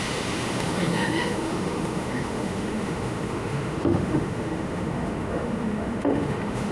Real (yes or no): no